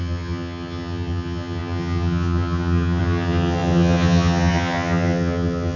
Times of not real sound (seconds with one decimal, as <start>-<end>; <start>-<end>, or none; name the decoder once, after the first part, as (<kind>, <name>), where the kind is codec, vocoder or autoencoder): 0.0-5.8 (vocoder, HiFi-GAN)